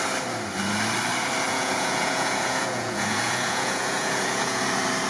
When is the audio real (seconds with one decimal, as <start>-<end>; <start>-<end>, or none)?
0.0-1.5; 4.6-5.1